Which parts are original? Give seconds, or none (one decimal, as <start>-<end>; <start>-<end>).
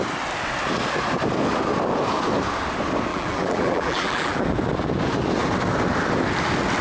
0.0-3.1; 4.4-6.8